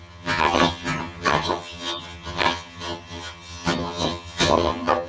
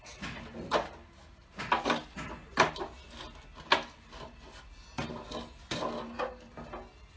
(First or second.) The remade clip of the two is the first